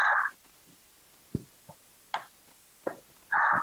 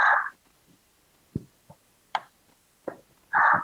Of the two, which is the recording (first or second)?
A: first